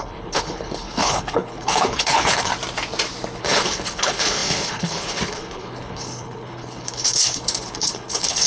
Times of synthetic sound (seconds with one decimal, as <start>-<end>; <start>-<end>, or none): 0.0-2.5; 3.4-8.5